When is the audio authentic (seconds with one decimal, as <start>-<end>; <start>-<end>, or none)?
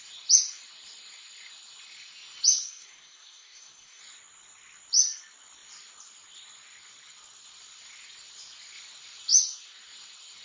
0.0-2.6; 4.0-10.4